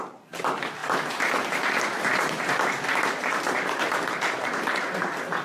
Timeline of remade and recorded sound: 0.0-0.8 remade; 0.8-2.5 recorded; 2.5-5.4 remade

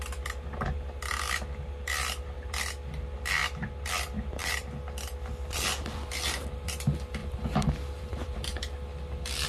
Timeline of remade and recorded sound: 0.0-4.4 recorded; 4.4-5.0 remade; 5.0-7.2 recorded; 7.2-8.5 remade; 8.5-9.5 recorded

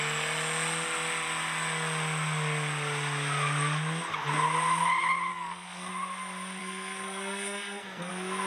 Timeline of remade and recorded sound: 0.0-5.3 recorded; 5.3-5.9 remade; 5.9-6.6 recorded; 6.6-8.1 remade; 8.1-8.5 recorded

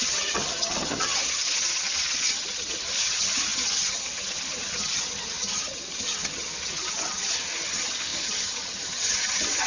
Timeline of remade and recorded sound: 0.0-9.7 remade

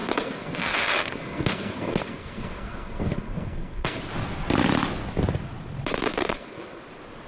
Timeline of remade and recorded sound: 0.0-4.0 remade; 4.0-6.2 recorded; 6.2-6.8 remade; 6.8-7.3 recorded

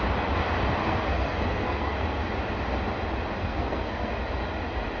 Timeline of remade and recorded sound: 0.0-0.8 recorded; 0.8-2.3 remade; 2.3-3.4 recorded; 3.4-4.1 remade; 4.1-5.0 recorded

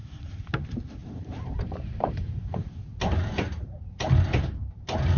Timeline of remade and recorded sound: 0.0-0.5 remade; 0.5-1.0 recorded; 1.0-4.1 remade; 4.1-5.2 recorded

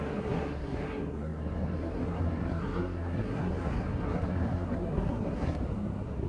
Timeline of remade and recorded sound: 0.0-6.3 remade